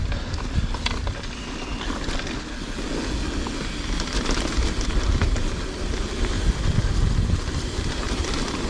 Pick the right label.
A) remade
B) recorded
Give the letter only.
B